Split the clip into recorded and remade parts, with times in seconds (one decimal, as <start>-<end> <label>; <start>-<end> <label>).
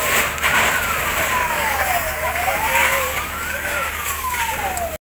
0.0-1.4 recorded; 1.4-4.4 remade; 4.4-5.0 recorded